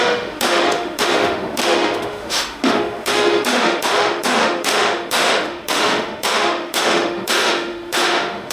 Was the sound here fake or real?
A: fake